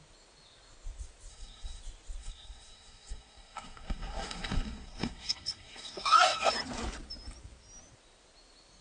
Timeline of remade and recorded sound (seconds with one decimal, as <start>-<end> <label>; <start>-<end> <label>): 0.0-1.3 recorded; 1.3-1.8 remade; 1.8-2.2 recorded; 2.2-6.5 remade; 6.5-8.8 recorded